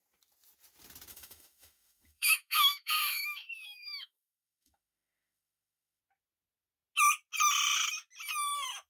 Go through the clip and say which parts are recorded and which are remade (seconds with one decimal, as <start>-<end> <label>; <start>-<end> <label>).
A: 0.0-1.1 recorded; 1.1-6.0 remade; 6.0-8.9 recorded